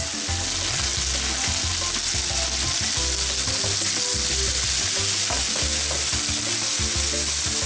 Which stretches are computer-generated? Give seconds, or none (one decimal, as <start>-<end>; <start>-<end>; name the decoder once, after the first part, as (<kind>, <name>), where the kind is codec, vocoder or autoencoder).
none